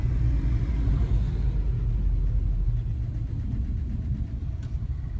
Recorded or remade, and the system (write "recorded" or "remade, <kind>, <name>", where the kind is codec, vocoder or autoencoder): recorded